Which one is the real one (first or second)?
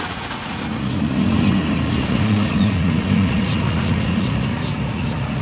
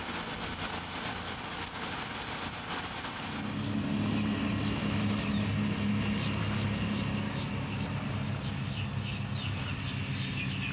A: second